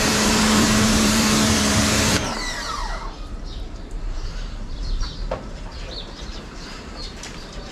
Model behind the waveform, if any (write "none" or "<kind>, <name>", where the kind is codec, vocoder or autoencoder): vocoder, BigVGAN v2